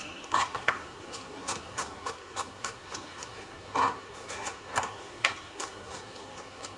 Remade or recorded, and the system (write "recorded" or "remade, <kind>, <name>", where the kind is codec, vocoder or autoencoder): remade, codec, SNAC